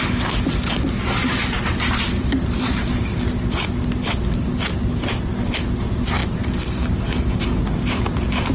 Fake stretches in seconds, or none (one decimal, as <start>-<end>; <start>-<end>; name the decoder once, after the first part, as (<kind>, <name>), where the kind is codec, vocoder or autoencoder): 1.4-3.0 (vocoder, BigVGAN v2); 4.7-5.5

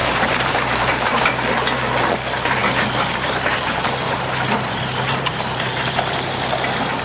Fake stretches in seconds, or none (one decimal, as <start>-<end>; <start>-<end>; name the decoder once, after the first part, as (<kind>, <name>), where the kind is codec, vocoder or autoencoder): 0.0-1.2 (vocoder, BigVGAN v2); 2.6-6.3

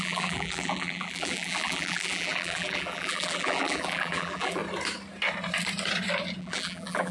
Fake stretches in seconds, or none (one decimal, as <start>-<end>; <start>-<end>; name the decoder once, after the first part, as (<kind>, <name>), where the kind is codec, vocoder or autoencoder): 0.0-4.6 (vocoder, BigVGAN v2); 6.4-7.1

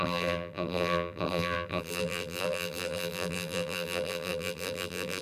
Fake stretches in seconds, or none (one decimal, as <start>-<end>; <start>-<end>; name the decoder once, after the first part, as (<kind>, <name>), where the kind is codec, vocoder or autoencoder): 0.0-5.2 (vocoder, BigVGAN v2)